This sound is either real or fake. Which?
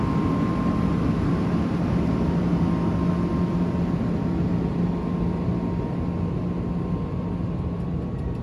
real